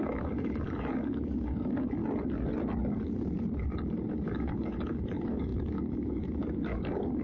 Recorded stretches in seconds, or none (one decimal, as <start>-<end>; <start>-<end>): 2.0-4.1